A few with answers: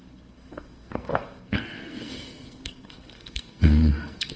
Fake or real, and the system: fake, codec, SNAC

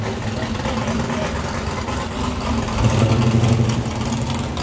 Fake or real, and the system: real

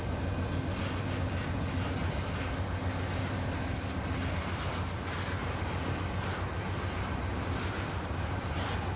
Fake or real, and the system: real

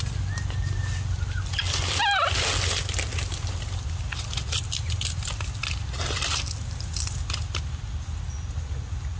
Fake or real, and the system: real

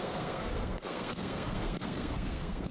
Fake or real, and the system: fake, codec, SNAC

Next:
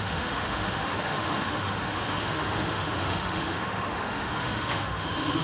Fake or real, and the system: fake, autoencoder, DAC-VAE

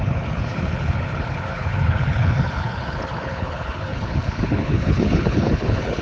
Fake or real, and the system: fake, codec, HILCodec